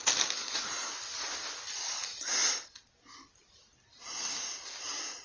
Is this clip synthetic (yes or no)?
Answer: no